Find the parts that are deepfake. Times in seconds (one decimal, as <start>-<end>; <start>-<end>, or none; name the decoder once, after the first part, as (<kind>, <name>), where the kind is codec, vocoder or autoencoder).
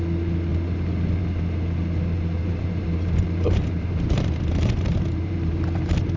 2.4-6.2 (vocoder, BigVGAN v2)